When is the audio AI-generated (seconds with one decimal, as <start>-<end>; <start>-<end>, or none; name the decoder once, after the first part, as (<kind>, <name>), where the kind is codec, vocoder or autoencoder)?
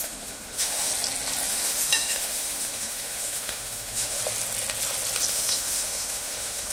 0.0-0.9 (autoencoder, DAC-VAE); 1.5-4.2; 5.3-6.7